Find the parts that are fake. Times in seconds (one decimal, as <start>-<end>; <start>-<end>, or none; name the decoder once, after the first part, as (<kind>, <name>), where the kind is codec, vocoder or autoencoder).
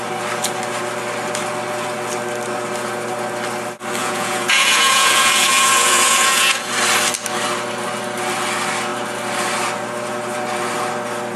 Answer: 4.0-6.7 (vocoder, Vocos)